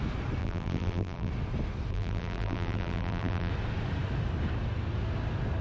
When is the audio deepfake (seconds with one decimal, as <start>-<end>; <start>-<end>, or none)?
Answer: 0.4-1.3; 1.9-3.5